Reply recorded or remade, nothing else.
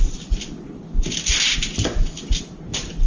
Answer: recorded